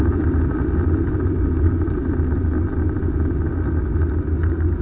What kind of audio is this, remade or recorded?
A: recorded